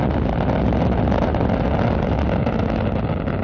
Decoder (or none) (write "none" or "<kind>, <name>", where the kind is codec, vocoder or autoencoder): none